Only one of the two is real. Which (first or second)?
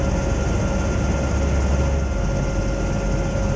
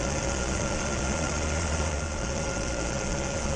first